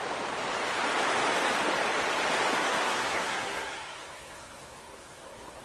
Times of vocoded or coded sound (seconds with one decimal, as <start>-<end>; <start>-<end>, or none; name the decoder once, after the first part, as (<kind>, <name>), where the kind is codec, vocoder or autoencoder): 2.5-5.6 (codec, SNAC)